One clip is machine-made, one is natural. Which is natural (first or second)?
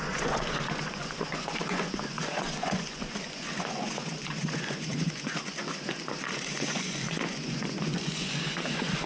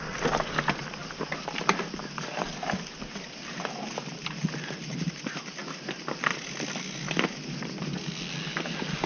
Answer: second